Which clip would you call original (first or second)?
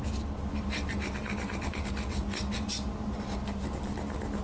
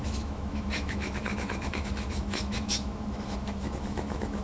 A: first